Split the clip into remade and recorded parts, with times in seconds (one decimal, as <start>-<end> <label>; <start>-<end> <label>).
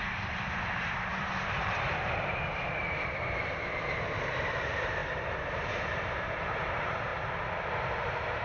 0.0-1.9 remade; 1.9-2.8 recorded; 2.8-7.1 remade; 7.1-7.8 recorded; 7.8-8.4 remade